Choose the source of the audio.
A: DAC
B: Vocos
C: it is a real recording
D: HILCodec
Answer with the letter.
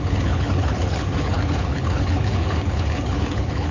D